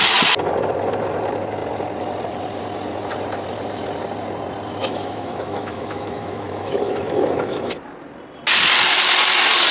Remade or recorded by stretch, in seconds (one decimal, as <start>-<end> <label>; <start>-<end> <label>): 0.0-4.8 recorded; 4.8-7.7 remade; 7.7-9.7 recorded